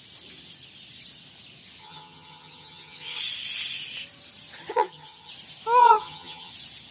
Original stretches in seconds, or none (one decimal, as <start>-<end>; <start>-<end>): 0.0-1.8; 3.2-4.7; 5.3-5.8; 6.5-6.9